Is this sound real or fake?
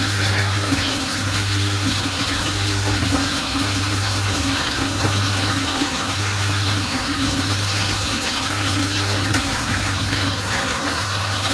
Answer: fake